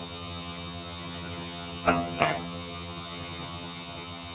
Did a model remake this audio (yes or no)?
yes